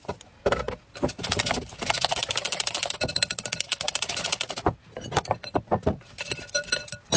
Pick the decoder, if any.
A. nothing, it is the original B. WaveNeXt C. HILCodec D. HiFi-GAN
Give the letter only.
A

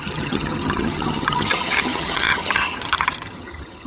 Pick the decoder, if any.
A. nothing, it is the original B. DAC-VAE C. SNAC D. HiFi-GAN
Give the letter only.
D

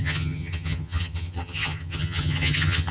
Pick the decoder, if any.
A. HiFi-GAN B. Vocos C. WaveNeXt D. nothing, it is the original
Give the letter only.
A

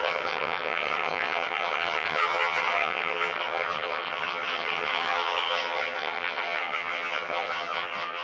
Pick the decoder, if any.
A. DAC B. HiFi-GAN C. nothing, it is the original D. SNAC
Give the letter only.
B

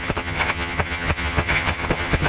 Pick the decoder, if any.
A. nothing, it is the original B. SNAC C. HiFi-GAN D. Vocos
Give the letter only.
C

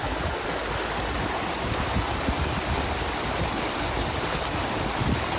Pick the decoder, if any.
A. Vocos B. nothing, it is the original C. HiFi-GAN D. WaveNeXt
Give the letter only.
B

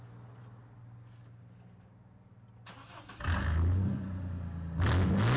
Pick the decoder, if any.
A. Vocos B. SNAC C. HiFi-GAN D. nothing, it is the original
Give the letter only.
D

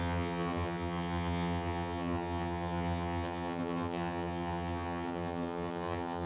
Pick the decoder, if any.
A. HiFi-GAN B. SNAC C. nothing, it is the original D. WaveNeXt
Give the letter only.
A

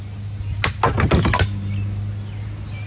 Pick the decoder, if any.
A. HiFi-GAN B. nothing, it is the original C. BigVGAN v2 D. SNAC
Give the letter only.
B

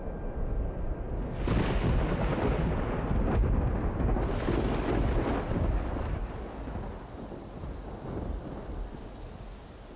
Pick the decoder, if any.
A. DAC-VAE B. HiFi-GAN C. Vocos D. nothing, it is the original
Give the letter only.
D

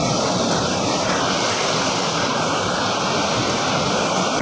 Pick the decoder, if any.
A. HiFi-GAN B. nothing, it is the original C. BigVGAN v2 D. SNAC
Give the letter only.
B